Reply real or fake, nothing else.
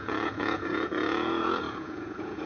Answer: fake